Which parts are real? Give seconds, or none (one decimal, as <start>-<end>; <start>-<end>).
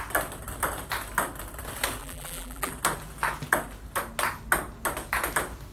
0.0-2.0; 2.7-5.7